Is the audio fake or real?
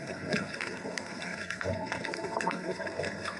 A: fake